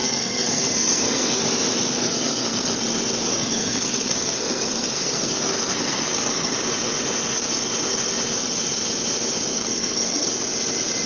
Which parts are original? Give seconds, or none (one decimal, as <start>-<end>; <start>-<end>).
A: 1.4-2.0; 2.8-3.3; 6.5-9.5; 10.3-11.1